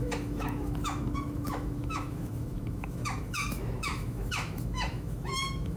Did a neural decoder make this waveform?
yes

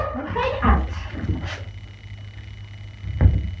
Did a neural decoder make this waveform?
no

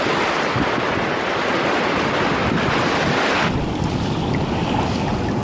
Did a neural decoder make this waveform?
no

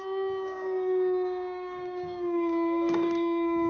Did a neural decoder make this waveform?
yes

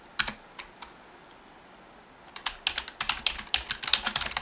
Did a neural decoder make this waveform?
no